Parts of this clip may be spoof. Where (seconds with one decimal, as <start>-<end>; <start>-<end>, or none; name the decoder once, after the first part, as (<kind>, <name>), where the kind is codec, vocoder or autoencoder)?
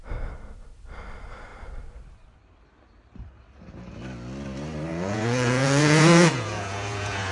4.9-7.3 (vocoder, Vocos)